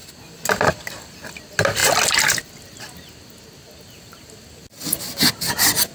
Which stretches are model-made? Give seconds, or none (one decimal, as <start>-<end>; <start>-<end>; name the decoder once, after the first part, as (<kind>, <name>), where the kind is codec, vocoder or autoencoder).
none